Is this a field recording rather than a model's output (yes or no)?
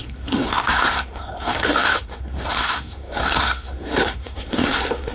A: no